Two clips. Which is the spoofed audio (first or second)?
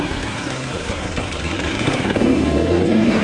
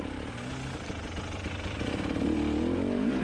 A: first